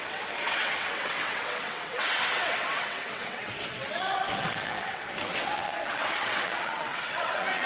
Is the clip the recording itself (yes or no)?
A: no